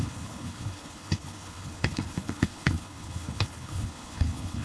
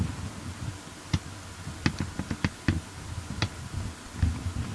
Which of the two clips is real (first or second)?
second